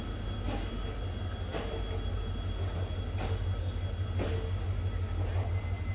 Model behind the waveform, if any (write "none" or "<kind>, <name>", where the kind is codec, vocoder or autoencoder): none